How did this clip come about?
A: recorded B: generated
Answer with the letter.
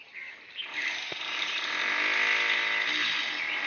A